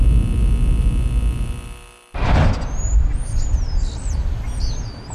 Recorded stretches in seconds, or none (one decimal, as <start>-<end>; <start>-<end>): 0.0-5.1